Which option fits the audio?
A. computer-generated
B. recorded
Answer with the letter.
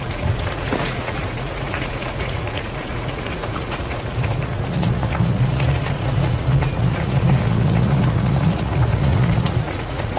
A